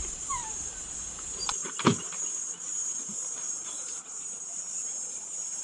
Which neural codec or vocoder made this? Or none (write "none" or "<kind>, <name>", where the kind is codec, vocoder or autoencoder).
vocoder, BigVGAN v2